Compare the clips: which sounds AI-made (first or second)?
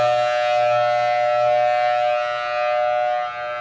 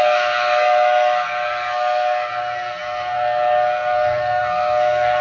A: second